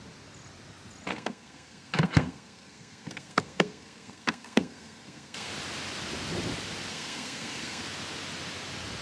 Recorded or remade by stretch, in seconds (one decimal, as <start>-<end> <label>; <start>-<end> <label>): 0.0-1.1 recorded; 1.1-5.5 remade; 5.5-6.9 recorded; 6.9-7.8 remade; 7.8-9.0 recorded